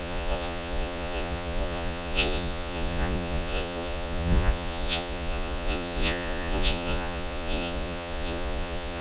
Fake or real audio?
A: fake